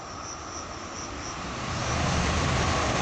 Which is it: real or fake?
real